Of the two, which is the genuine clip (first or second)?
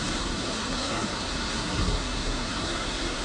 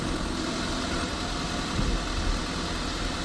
second